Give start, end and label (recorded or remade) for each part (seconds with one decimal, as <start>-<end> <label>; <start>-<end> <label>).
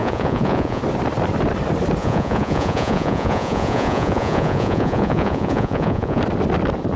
0.0-0.8 remade; 0.8-2.0 recorded; 2.0-6.2 remade; 6.2-7.0 recorded